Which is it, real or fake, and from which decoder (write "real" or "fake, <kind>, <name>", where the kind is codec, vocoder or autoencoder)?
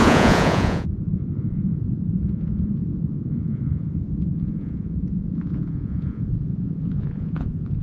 fake, vocoder, Vocos